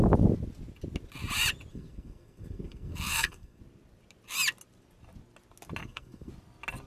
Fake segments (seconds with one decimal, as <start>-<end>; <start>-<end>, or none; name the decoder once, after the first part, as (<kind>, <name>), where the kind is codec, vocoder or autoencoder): 1.7-3.6 (codec, SNAC); 5.8-6.3